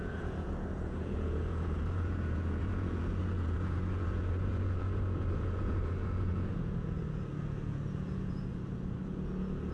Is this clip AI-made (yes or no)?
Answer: yes